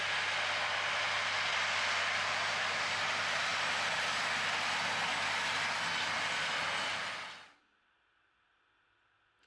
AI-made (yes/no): no